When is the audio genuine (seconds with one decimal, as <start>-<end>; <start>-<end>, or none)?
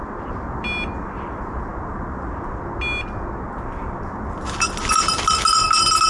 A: 0.0-6.1